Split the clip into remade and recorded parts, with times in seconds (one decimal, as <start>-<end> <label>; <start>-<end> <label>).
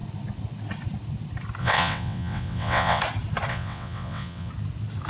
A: 0.0-1.6 recorded; 1.6-3.0 remade; 3.0-3.5 recorded; 3.5-4.5 remade; 4.5-5.1 recorded